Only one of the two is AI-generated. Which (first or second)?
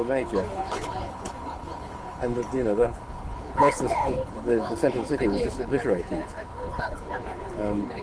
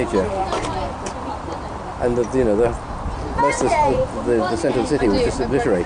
first